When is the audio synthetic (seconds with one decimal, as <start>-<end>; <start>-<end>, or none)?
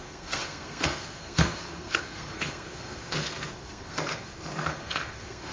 0.0-5.5